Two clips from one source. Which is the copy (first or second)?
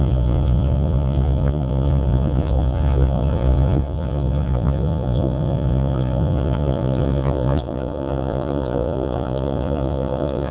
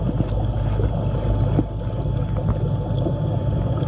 first